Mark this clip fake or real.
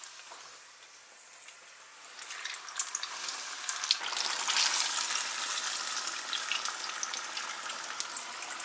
real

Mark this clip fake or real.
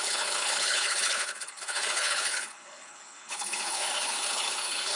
fake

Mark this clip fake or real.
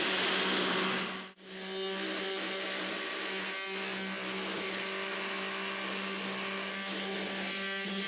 real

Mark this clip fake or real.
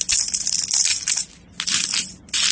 real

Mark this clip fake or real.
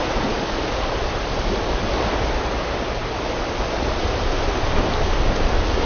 real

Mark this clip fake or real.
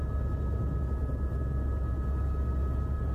real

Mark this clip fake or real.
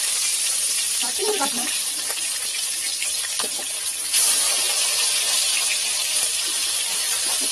fake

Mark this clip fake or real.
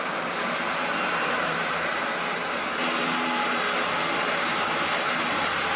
fake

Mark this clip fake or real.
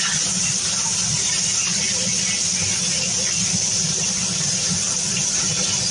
real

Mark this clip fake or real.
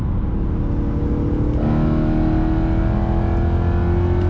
real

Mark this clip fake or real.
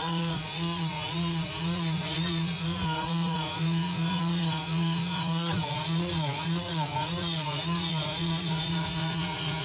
fake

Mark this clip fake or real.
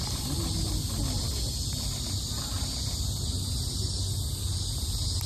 real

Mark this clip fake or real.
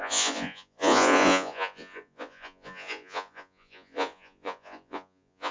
fake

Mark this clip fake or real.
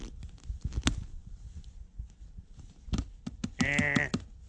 real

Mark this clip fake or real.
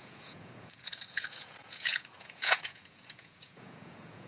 fake